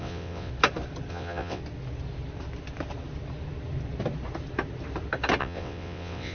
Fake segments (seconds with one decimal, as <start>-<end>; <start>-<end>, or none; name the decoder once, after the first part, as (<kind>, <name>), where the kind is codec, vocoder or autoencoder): 0.0-0.5 (vocoder, WaveNeXt); 1.1-1.6; 5.4-6.3